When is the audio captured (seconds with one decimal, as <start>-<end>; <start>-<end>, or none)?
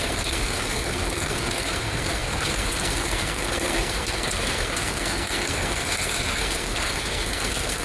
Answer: none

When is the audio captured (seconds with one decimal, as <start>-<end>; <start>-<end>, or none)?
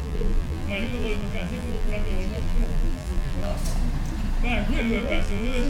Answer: 3.5-4.8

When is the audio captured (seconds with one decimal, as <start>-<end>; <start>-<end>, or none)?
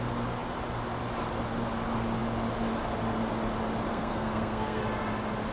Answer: 0.0-3.9; 4.8-5.5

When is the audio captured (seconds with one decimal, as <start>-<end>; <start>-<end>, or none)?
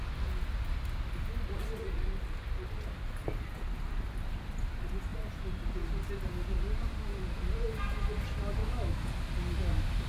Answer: 0.0-8.6; 9.1-10.1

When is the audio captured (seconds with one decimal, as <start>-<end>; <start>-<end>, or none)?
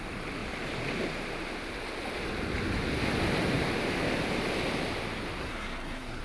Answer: 0.0-5.4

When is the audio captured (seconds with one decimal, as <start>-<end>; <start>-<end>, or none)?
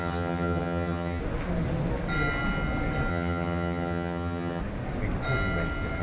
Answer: 1.2-3.1; 4.6-6.0